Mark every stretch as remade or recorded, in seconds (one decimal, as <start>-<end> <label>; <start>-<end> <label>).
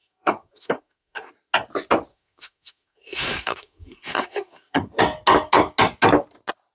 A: 0.0-1.3 remade; 1.3-2.1 recorded; 2.1-5.0 remade; 5.0-6.7 recorded